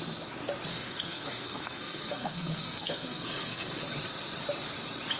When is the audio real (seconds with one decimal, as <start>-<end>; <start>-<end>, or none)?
0.0-0.7; 3.8-5.2